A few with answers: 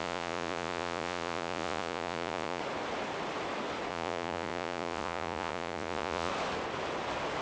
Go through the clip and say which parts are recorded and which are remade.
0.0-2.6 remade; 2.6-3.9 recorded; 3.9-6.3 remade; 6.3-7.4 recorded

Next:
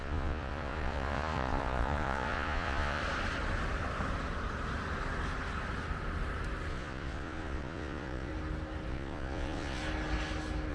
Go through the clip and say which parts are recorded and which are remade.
0.0-3.0 remade; 3.0-6.7 recorded; 6.7-8.3 remade; 8.3-8.9 recorded; 8.9-9.8 remade; 9.8-10.7 recorded

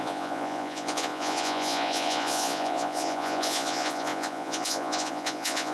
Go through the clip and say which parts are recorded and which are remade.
0.0-5.7 remade

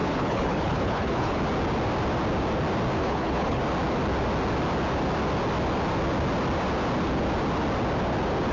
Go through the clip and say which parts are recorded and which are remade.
0.0-1.4 remade; 1.4-3.0 recorded; 3.0-3.6 remade; 3.6-8.5 recorded

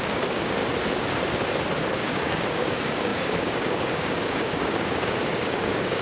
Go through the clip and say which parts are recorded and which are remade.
0.0-0.6 remade; 0.6-2.0 recorded; 2.0-6.0 remade

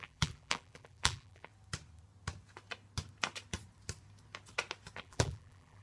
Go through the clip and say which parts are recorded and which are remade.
0.0-1.5 remade; 1.5-5.0 recorded; 5.0-5.8 remade

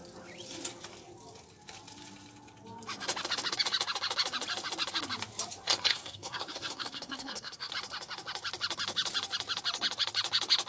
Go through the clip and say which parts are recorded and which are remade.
0.0-5.9 recorded; 5.9-7.7 remade; 7.7-10.7 recorded